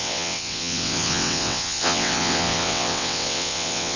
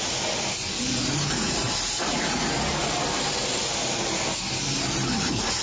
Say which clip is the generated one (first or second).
first